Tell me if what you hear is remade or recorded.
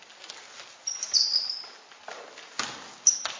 recorded